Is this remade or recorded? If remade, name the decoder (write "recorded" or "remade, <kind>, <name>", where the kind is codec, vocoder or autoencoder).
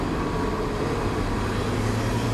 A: recorded